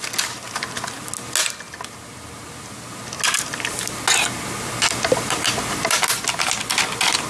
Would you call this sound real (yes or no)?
yes